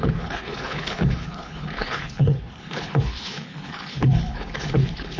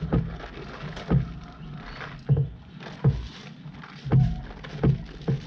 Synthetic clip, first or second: first